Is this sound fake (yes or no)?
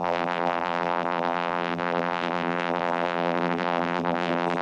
yes